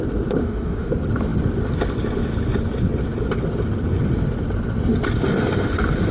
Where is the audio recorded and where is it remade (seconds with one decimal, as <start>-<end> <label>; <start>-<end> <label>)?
0.0-0.4 recorded; 0.4-0.9 remade; 0.9-6.1 recorded

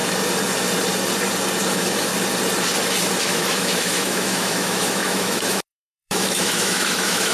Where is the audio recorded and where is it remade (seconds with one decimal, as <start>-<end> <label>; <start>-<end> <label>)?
0.0-1.7 recorded; 1.7-2.1 remade; 2.1-3.2 recorded; 3.2-7.3 remade

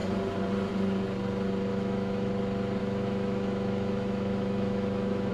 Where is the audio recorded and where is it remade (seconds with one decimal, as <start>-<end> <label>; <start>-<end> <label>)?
0.0-1.7 recorded; 1.7-2.3 remade; 2.3-2.8 recorded; 2.8-5.3 remade

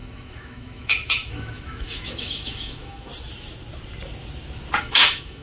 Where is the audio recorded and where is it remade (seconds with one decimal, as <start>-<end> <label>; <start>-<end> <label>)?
0.0-3.1 remade; 3.1-4.8 recorded; 4.8-5.4 remade

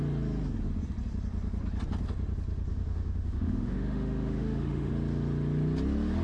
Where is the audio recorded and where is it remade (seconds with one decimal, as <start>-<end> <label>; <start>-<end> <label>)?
0.0-2.7 recorded; 2.7-4.9 remade; 4.9-6.2 recorded

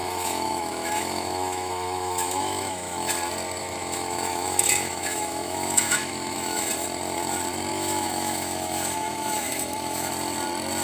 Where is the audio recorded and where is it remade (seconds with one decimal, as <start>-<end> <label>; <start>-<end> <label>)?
0.0-3.1 remade; 3.1-3.6 recorded; 3.6-6.7 remade; 6.7-7.7 recorded; 7.7-10.1 remade; 10.1-10.8 recorded

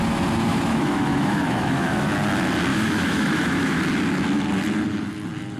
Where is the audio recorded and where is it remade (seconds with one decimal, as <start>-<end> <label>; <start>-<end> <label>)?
0.0-0.5 recorded; 0.5-2.1 remade; 2.1-2.7 recorded; 2.7-3.8 remade; 3.8-5.6 recorded

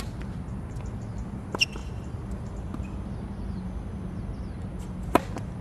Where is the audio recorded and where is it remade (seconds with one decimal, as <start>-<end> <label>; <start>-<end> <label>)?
0.0-5.6 recorded